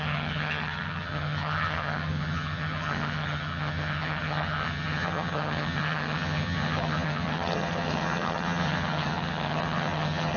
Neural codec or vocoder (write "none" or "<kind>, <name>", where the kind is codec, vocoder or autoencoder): vocoder, HiFi-GAN